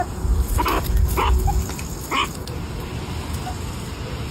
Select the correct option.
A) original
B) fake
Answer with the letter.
A